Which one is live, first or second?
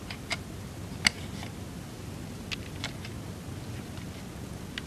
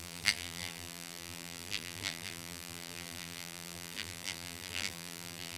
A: first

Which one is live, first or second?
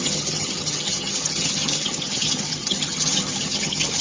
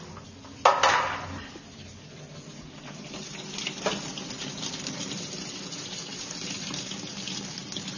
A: second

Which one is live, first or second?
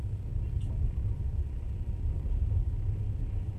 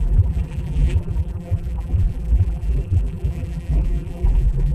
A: first